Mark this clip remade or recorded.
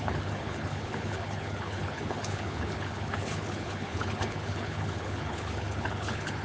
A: remade